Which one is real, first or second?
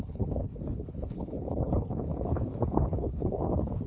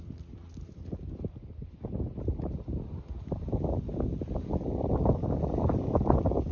second